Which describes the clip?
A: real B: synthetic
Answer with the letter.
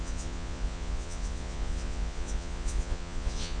B